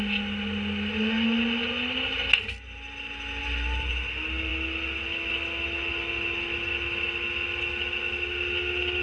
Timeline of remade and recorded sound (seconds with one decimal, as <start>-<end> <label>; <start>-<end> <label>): 0.0-3.4 recorded; 3.4-3.9 remade; 3.9-9.0 recorded